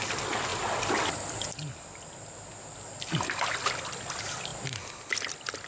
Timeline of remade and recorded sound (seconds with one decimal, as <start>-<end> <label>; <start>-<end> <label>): 0.0-5.7 recorded